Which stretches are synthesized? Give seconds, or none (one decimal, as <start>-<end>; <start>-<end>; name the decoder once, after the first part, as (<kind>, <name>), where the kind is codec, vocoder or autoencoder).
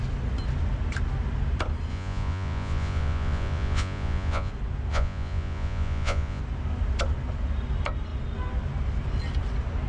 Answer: 1.9-4.5 (vocoder, Vocos); 4.9-6.4